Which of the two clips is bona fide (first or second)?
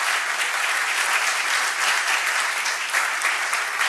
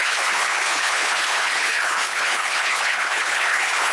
first